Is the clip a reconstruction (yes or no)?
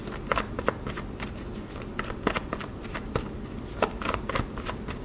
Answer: no